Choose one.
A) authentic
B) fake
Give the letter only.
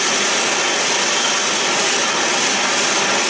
A